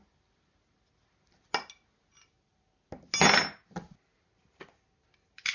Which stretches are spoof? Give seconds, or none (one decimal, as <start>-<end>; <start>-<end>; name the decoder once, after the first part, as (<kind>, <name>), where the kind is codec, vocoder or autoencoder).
none